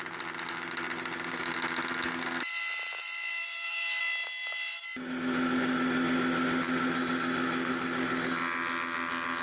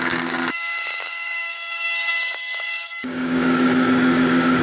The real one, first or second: first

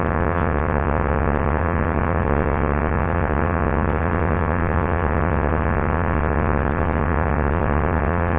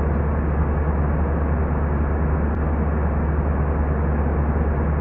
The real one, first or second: second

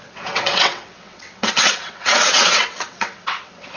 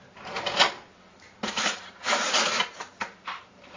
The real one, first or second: second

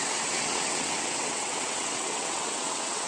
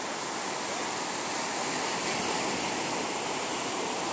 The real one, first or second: second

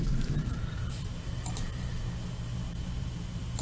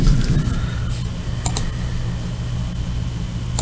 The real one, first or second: second